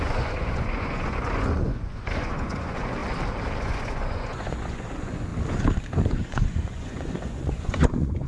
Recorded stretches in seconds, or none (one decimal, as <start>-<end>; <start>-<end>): 3.0-3.6; 5.3-6.0